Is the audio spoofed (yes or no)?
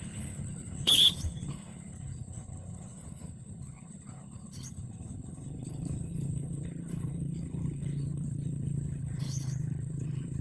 yes